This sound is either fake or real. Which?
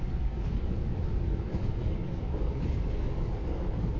fake